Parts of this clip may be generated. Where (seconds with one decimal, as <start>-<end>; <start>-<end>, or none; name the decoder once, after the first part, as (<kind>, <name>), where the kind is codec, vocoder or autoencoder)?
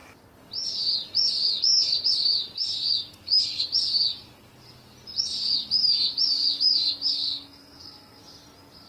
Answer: 7.1-8.2 (codec, SNAC)